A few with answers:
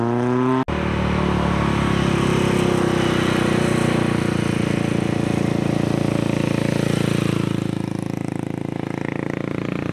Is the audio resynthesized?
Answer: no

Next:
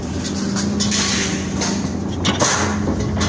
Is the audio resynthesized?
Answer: no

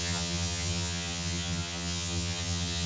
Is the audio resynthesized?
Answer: yes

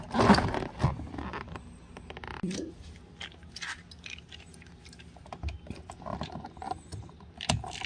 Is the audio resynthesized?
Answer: no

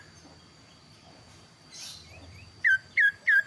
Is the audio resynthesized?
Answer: no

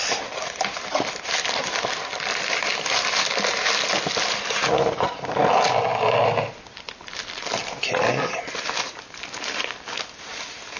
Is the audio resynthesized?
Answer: no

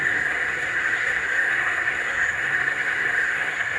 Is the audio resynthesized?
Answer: yes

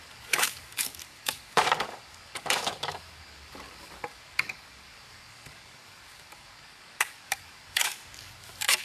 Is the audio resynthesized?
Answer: yes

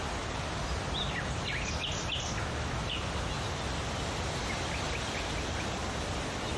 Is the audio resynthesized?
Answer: no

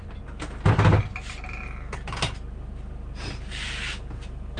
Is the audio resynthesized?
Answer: no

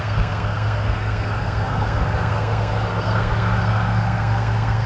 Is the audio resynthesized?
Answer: yes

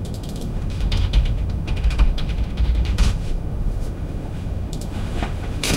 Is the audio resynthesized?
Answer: yes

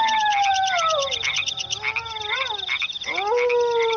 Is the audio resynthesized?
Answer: no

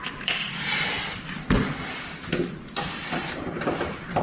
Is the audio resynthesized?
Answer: no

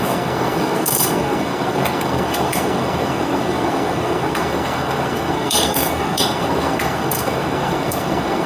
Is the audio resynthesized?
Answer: yes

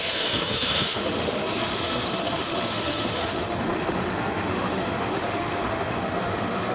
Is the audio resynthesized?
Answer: yes